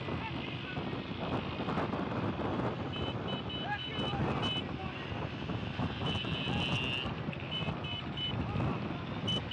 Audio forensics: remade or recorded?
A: recorded